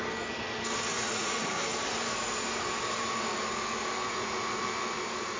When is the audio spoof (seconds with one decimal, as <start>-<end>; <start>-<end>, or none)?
0.9-1.6; 4.1-4.6